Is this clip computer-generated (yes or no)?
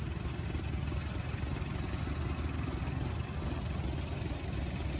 no